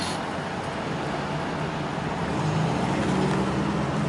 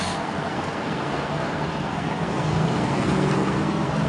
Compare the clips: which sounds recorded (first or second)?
first